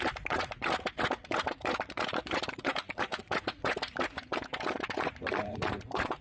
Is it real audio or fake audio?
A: fake